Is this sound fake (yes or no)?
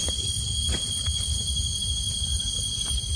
no